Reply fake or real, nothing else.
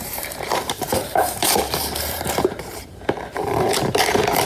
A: fake